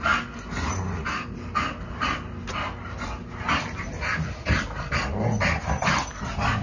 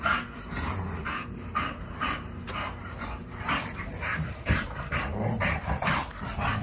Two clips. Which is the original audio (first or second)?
first